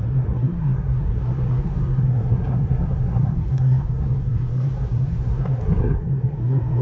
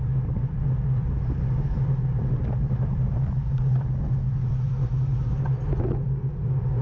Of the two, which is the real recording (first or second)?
second